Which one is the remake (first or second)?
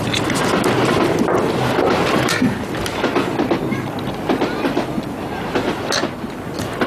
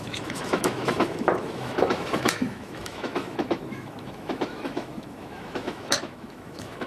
second